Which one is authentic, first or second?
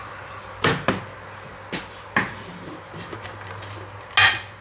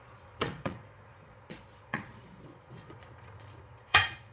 first